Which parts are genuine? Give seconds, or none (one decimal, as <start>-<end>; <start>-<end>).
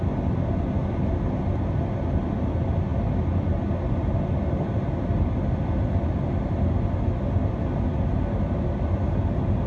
0.0-0.8; 1.3-9.7